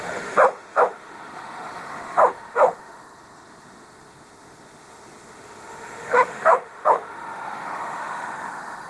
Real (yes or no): no